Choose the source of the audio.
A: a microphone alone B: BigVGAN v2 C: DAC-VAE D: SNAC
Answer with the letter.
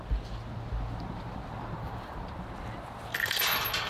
A